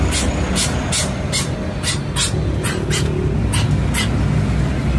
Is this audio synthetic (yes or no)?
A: no